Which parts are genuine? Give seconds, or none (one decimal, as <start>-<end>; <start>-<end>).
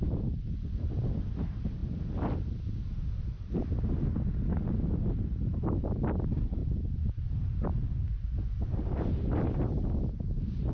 0.0-10.7